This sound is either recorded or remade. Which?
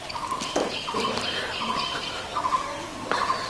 recorded